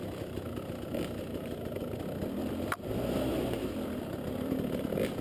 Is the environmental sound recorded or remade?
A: recorded